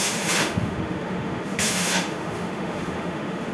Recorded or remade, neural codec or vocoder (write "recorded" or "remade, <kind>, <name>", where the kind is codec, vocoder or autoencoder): remade, autoencoder, DAC-VAE